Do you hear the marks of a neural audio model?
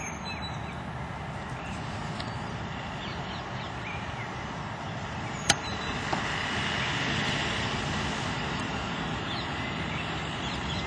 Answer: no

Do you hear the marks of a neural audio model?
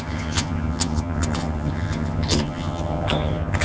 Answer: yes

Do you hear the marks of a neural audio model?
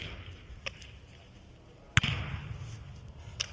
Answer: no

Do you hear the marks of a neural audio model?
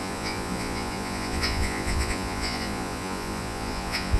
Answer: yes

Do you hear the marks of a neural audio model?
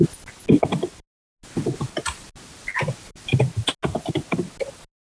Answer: no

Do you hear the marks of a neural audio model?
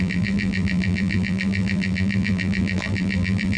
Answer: yes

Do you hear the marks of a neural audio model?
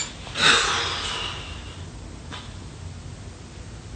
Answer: no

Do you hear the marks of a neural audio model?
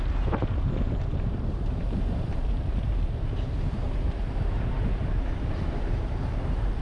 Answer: yes